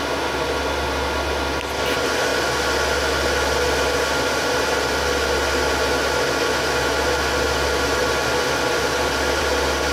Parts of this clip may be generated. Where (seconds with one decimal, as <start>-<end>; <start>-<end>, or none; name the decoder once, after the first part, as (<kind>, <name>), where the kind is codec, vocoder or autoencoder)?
none